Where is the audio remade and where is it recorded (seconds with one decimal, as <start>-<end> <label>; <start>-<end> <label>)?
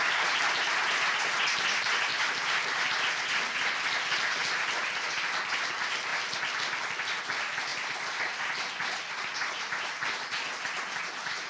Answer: 0.0-2.1 recorded; 2.1-3.8 remade; 3.8-11.5 recorded